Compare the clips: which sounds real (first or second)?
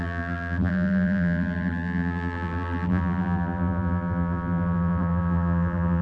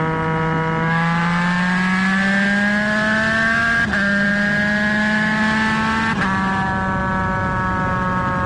second